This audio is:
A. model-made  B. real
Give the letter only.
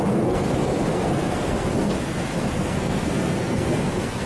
A